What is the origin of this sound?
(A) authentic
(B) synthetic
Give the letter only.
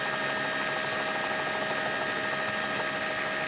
A